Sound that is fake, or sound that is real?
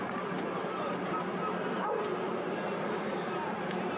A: real